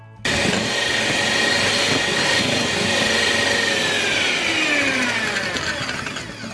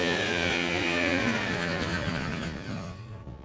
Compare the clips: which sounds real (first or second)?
first